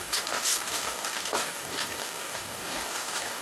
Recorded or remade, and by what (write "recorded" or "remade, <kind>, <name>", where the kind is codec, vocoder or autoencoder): remade, codec, DAC